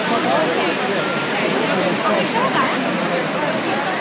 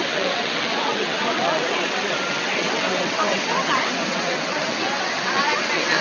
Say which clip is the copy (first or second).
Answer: second